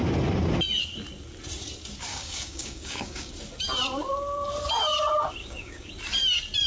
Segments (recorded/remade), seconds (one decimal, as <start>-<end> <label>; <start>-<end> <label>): 0.0-2.1 recorded; 2.1-3.3 remade; 3.3-5.4 recorded; 5.4-5.9 remade; 5.9-6.7 recorded